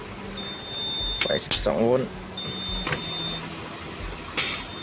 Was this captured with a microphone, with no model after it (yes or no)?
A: yes